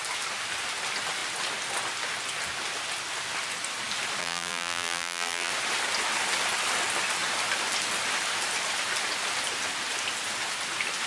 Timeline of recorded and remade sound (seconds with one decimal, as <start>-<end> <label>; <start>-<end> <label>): 0.0-4.2 recorded; 4.2-5.5 remade; 5.5-11.1 recorded